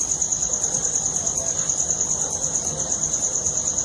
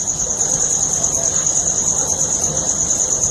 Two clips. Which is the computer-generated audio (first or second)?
second